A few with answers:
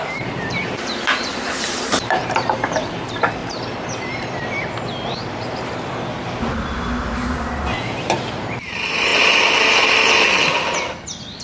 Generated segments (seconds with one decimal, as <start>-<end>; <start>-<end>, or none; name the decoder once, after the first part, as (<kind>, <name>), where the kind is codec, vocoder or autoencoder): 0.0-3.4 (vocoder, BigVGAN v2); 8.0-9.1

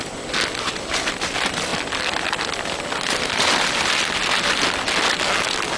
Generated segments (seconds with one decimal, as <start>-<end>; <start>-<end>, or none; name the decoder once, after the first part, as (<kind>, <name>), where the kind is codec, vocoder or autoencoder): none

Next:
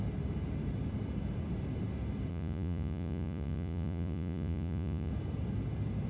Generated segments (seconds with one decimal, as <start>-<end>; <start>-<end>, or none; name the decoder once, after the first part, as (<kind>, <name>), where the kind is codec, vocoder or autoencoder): 2.3-5.1 (vocoder, Vocos)

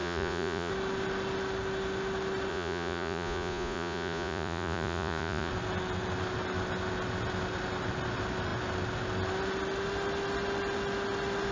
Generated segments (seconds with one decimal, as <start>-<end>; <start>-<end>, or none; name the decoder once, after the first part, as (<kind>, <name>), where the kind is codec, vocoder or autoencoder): 0.0-0.7 (vocoder, Vocos); 2.5-5.5